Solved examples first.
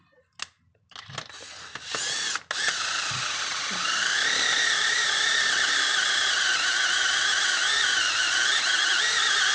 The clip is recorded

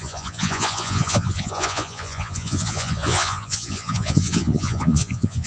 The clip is remade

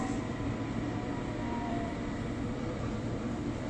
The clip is remade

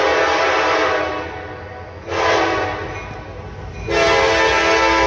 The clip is recorded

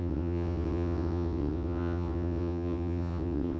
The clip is remade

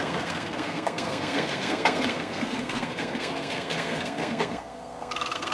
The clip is remade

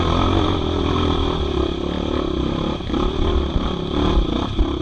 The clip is recorded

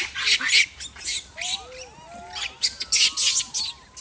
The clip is recorded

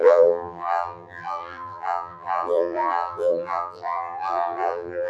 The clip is remade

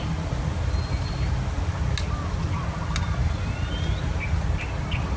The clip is recorded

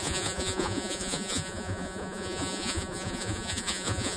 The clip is remade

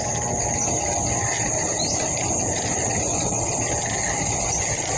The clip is recorded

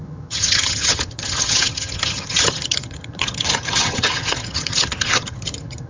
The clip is remade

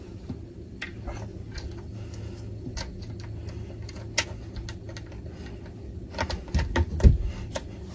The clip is recorded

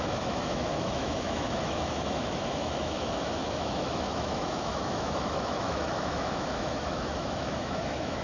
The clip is remade